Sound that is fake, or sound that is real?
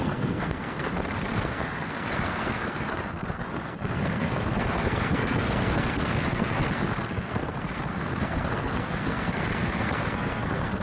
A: fake